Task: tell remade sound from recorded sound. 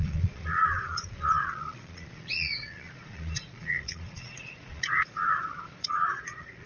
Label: remade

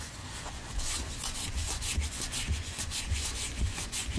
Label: remade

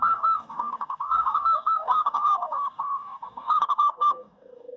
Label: remade